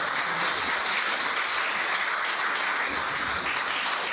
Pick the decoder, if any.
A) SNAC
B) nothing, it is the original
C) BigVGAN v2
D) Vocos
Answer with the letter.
B